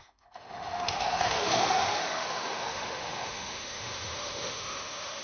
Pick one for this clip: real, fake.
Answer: fake